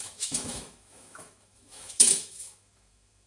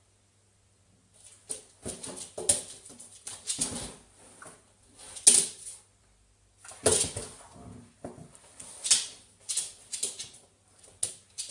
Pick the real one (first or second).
second